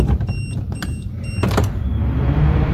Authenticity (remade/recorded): remade